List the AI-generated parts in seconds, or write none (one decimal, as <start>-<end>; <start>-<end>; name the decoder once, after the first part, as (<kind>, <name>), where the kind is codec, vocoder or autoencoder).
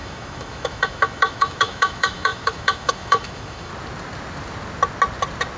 0.0-3.7 (autoencoder, DAC-VAE)